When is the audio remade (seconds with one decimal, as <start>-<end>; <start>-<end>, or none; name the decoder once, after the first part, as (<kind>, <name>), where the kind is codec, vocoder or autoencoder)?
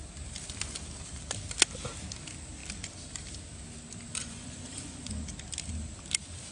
4.2-5.2 (vocoder, Vocos)